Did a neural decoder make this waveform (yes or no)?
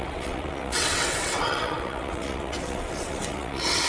yes